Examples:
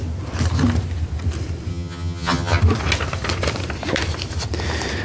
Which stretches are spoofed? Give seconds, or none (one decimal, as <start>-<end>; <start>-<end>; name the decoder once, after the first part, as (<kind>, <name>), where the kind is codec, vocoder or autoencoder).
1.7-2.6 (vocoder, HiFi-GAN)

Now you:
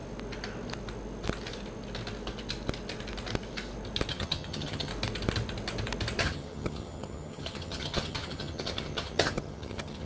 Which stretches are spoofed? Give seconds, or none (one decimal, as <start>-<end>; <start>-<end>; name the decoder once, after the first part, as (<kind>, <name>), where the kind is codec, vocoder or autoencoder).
4.1-4.9 (vocoder, HiFi-GAN); 6.2-10.1

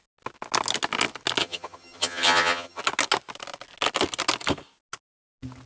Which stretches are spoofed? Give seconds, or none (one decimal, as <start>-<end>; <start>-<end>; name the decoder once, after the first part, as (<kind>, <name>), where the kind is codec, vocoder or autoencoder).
1.4-2.8 (vocoder, HiFi-GAN)